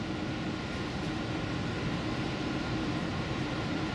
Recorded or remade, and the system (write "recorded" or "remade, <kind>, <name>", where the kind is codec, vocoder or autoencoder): recorded